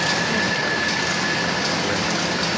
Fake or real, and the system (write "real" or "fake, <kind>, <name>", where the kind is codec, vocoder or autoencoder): real